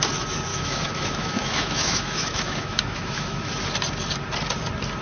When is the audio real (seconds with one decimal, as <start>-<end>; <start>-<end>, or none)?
0.0-0.5; 3.5-5.0